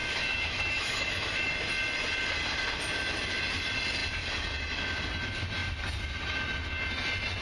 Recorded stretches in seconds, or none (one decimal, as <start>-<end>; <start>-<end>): 1.5-7.4